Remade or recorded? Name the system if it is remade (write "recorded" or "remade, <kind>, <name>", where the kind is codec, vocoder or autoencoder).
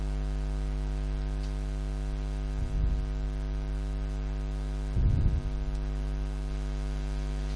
recorded